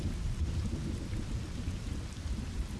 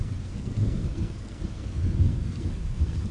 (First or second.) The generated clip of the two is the second